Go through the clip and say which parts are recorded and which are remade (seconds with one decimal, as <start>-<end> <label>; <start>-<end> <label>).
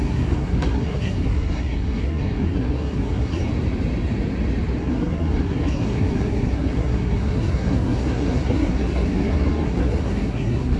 0.0-3.4 remade; 3.4-4.8 recorded; 4.8-10.8 remade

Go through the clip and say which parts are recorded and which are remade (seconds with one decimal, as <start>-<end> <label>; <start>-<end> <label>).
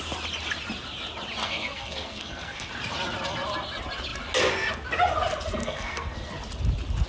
0.0-1.4 recorded; 1.4-2.7 remade; 2.7-5.6 recorded; 5.6-6.3 remade; 6.3-7.1 recorded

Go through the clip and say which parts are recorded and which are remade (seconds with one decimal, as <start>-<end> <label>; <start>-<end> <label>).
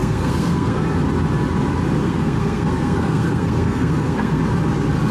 0.0-0.8 remade; 0.8-2.0 recorded; 2.0-4.4 remade; 4.4-5.1 recorded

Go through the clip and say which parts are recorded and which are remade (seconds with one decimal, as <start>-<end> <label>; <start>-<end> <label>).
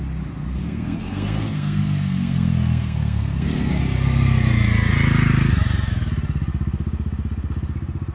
0.0-0.6 recorded; 0.6-3.7 remade; 3.7-8.1 recorded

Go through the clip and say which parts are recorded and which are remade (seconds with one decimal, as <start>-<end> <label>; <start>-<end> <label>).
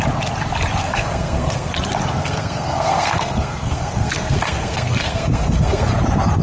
0.0-0.8 recorded; 0.8-1.7 remade; 1.7-2.2 recorded; 2.2-5.9 remade; 5.9-6.4 recorded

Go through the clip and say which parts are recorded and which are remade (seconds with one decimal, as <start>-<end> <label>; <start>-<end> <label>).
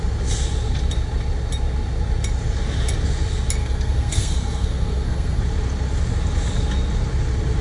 0.0-3.6 recorded; 3.6-5.4 remade; 5.4-7.6 recorded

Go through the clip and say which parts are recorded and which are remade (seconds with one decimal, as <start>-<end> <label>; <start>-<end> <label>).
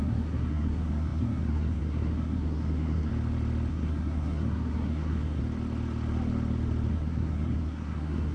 0.0-3.1 remade; 3.1-3.7 recorded; 3.7-5.4 remade; 5.4-6.9 recorded; 6.9-8.3 remade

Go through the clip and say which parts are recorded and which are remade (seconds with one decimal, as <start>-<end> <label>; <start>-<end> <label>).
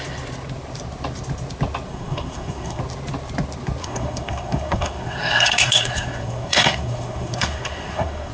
0.0-1.9 recorded; 1.9-2.8 remade; 2.8-3.8 recorded; 3.8-8.3 remade